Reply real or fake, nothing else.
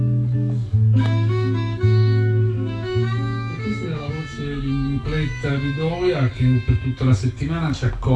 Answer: fake